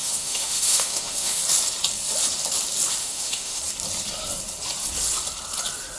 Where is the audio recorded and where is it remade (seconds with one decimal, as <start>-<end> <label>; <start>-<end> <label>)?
0.0-1.4 remade; 1.4-3.0 recorded; 3.0-3.6 remade; 3.6-6.0 recorded